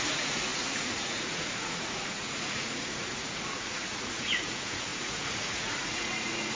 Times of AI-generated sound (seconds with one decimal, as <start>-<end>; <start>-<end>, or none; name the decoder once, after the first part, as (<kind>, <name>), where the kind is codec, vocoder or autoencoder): 0.0-6.5 (vocoder, Vocos)